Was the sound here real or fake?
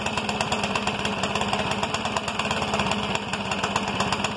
real